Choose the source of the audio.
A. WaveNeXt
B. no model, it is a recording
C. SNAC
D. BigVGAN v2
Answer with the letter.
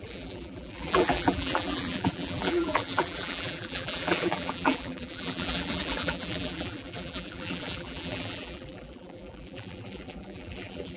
D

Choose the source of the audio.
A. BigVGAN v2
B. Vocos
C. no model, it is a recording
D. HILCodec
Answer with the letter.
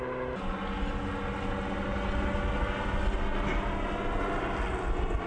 C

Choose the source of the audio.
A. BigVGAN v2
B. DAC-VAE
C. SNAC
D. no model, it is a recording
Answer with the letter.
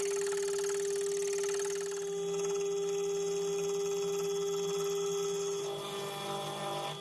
D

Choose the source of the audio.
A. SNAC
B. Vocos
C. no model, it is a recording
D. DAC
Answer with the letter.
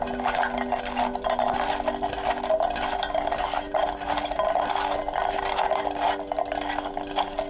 C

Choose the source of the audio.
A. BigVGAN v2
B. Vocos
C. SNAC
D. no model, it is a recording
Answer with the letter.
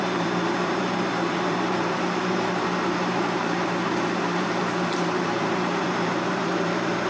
A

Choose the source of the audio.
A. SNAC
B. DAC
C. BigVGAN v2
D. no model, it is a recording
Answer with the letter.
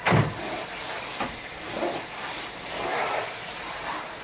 D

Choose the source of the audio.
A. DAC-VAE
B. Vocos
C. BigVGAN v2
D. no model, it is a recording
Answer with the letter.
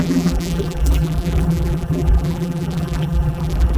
C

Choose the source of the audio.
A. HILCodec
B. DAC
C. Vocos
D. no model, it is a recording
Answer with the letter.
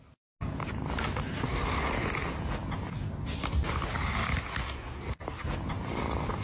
D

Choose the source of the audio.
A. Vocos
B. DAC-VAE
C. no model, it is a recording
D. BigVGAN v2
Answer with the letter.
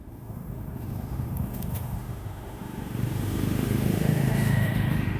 B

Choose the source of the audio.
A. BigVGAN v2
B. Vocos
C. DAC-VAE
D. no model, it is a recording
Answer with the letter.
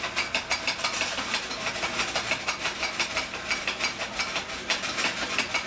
D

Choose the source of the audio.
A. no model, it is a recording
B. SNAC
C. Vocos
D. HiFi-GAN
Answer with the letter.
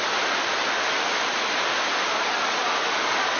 A